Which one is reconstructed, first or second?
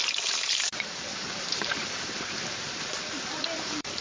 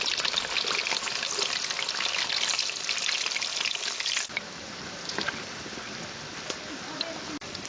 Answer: first